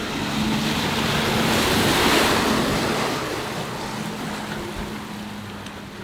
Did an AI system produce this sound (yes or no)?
no